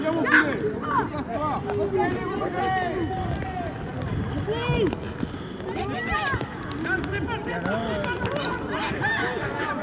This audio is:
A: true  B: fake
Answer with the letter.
A